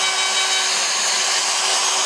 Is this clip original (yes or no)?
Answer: yes